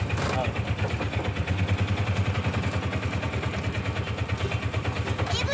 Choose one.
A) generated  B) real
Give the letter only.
B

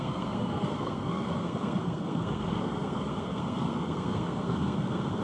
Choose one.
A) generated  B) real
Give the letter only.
A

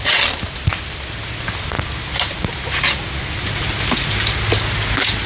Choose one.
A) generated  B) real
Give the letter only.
B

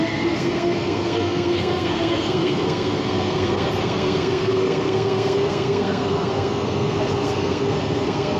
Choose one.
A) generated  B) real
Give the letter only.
A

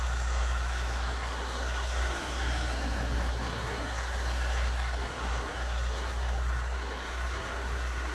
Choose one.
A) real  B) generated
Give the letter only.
B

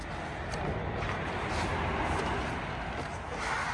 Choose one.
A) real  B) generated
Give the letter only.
A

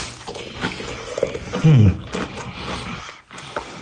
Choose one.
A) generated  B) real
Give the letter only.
B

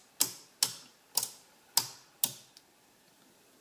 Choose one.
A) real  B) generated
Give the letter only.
A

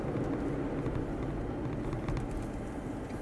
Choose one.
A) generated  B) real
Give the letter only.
B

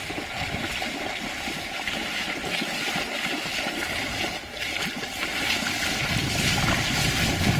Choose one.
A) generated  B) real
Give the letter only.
B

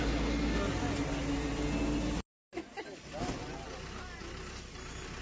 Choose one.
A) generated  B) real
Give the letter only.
B